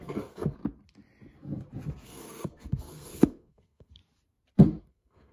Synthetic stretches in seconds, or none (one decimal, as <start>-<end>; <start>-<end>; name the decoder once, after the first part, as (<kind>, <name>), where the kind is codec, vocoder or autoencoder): 0.0-0.6 (codec, SNAC); 1.9-4.0; 4.8-5.3